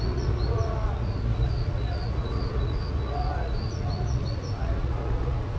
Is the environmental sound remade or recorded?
remade